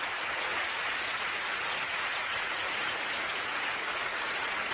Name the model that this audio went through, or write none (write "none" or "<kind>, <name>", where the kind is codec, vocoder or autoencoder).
vocoder, Vocos